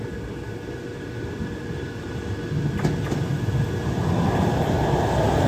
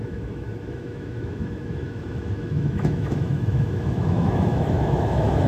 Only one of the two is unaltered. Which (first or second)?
first